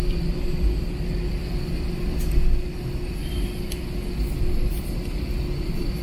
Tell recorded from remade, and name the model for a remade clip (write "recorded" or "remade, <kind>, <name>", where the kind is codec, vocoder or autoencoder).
recorded